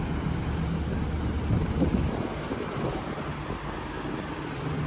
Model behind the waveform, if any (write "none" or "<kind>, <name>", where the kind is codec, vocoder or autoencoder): none